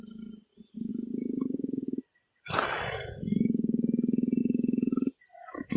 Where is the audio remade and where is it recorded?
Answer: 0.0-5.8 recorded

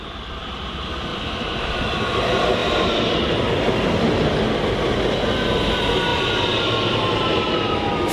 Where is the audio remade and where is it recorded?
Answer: 0.0-1.1 recorded; 1.1-1.7 remade; 1.7-8.1 recorded

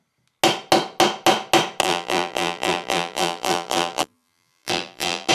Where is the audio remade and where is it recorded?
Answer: 0.0-1.8 recorded; 1.8-5.3 remade

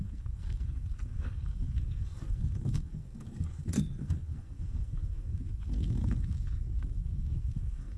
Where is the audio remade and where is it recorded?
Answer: 0.0-8.0 remade

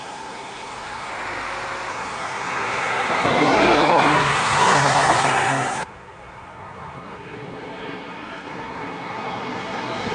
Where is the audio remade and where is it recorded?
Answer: 0.0-1.1 remade; 1.1-1.9 recorded; 1.9-10.1 remade

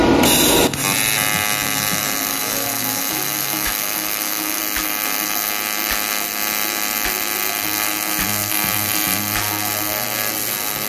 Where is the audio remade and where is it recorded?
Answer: 0.0-2.3 recorded; 2.3-4.6 remade; 4.6-10.9 recorded